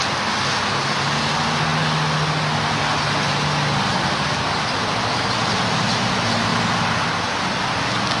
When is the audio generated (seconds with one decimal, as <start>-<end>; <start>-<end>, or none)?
none